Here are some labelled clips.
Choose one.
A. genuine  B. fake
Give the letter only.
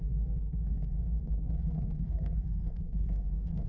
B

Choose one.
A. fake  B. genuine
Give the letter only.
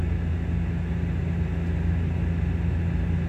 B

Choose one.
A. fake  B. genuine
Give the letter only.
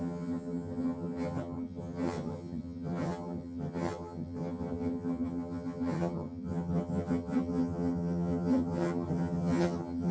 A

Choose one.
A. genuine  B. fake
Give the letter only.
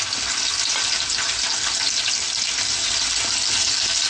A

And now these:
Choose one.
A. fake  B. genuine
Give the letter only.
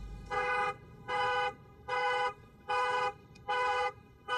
A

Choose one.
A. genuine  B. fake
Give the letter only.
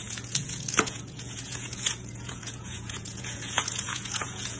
B